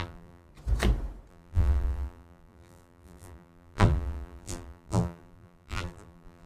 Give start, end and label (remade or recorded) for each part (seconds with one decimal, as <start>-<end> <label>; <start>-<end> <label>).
0.0-0.5 remade; 0.5-1.3 recorded; 1.3-6.5 remade